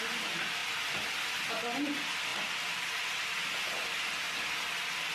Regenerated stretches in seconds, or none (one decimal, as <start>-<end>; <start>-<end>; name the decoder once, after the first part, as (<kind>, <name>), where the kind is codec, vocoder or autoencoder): none